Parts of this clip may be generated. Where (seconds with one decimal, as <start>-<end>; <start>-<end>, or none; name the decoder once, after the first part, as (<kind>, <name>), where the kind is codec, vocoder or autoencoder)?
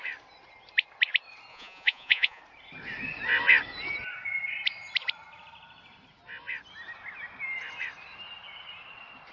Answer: 1.5-2.4 (vocoder, Vocos)